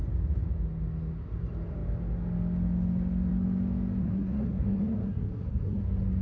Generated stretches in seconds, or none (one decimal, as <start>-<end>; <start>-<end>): 4.0-5.8